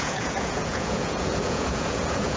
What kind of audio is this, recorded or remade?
remade